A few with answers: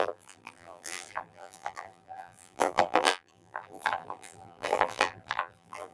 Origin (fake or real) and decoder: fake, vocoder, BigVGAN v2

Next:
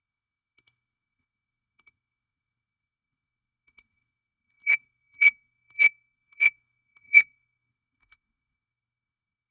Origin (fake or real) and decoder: fake, codec, SNAC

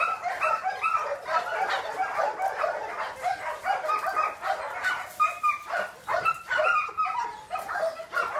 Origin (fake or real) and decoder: real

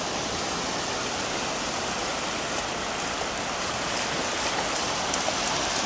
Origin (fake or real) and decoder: real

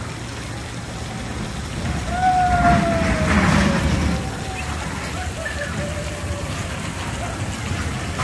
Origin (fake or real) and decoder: real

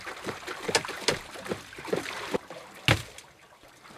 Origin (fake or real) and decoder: real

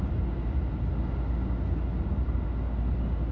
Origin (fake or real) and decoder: real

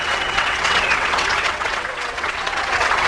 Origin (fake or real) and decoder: fake, vocoder, WaveNeXt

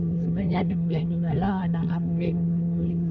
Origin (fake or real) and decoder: fake, codec, SNAC